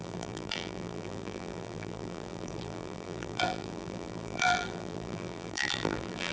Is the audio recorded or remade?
remade